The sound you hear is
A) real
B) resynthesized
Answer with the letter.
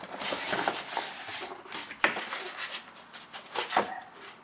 A